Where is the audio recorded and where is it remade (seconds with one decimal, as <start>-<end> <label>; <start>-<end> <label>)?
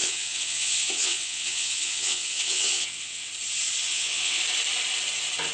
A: 0.0-3.3 remade; 3.3-3.9 recorded; 3.9-4.4 remade; 4.4-5.5 recorded